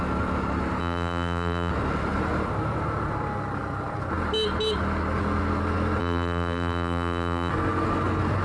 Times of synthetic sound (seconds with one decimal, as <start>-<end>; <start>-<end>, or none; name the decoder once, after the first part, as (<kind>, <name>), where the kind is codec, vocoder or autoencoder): 0.8-1.7 (vocoder, BigVGAN v2); 6.0-7.5